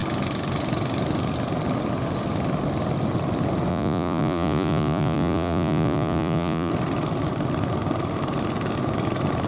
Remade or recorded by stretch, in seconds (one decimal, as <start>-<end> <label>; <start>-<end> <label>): 0.0-3.7 recorded; 3.7-6.7 remade; 6.7-9.5 recorded